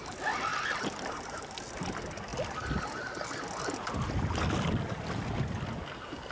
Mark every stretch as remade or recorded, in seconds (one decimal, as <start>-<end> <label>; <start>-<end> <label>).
0.0-0.5 recorded; 0.5-1.4 remade; 1.4-6.3 recorded